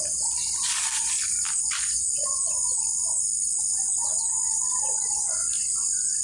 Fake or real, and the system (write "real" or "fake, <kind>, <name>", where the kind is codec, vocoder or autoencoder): real